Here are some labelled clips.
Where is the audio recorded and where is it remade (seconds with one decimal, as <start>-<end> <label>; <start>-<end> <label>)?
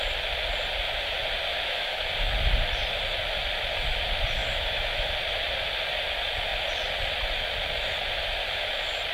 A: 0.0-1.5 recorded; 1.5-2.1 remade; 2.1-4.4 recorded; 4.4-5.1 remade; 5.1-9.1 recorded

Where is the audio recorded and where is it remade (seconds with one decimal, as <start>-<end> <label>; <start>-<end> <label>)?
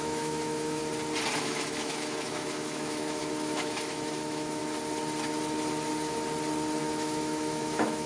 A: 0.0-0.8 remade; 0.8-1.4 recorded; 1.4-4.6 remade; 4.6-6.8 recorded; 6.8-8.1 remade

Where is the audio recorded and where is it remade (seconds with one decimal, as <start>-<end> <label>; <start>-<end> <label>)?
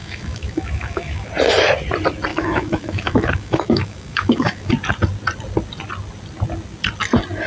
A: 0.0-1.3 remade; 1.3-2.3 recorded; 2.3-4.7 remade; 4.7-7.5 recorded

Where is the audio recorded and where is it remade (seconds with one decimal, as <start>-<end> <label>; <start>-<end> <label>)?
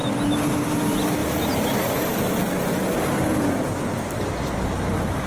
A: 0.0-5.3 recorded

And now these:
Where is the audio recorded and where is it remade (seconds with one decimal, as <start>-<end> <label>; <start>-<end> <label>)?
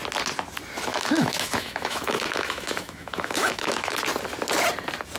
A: 0.0-0.9 recorded; 0.9-4.0 remade; 4.0-5.2 recorded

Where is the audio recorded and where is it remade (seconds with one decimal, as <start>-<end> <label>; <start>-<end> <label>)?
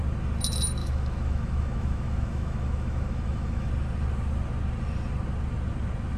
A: 0.0-0.8 recorded; 0.8-3.7 remade; 3.7-6.2 recorded